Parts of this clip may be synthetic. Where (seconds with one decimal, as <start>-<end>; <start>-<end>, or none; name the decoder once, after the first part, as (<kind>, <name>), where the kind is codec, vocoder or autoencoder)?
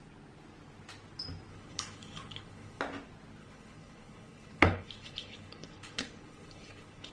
1.5-2.8 (codec, HILCodec); 3.4-7.1